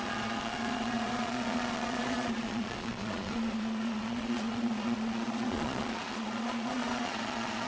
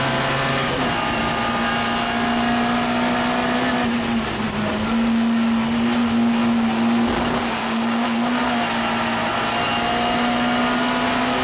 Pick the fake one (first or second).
first